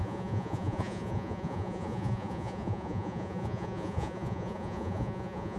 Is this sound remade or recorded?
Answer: remade